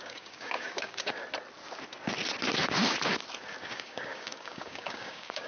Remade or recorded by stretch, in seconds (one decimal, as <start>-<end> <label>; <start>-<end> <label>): 0.0-1.2 remade; 1.2-3.6 recorded; 3.6-5.5 remade